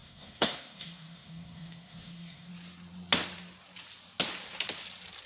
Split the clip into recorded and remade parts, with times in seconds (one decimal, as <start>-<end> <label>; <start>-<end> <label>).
0.0-2.5 remade; 2.5-5.3 recorded